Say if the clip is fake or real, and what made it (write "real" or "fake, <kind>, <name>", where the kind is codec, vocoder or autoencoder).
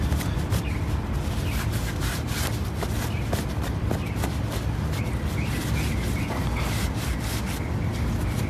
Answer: real